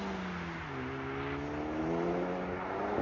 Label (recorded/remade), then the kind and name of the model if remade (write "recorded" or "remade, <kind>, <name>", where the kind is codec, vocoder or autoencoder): recorded